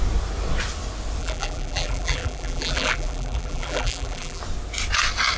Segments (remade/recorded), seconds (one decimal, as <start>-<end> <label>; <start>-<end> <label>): 0.0-1.2 recorded; 1.2-4.4 remade; 4.4-5.4 recorded